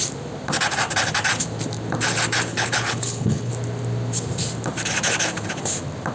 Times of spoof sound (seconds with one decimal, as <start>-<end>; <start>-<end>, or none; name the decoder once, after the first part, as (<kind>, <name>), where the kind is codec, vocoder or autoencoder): 2.5-3.5 (codec, HILCodec)